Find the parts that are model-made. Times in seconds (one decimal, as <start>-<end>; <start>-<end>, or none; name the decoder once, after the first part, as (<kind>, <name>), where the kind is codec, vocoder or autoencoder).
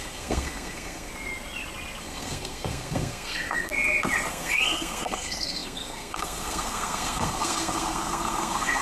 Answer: 0.0-1.1 (codec, SNAC); 2.0-3.7; 4.3-8.8